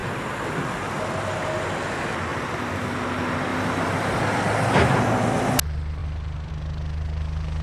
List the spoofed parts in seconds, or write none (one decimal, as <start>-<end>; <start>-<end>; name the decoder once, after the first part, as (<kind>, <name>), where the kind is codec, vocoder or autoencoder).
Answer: 2.3-2.9 (vocoder, BigVGAN v2); 3.5-4.2